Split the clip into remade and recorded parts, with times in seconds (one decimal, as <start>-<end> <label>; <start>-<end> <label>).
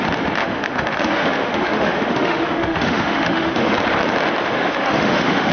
0.0-0.4 recorded; 0.4-3.7 remade; 3.7-4.4 recorded; 4.4-5.5 remade